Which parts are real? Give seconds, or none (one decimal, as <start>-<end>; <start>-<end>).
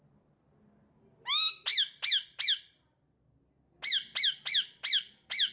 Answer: 0.0-5.5